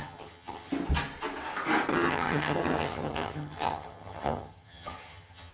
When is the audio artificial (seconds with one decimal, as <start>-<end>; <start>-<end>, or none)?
0.0-0.7; 1.9-5.5